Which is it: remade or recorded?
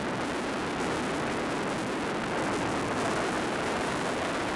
recorded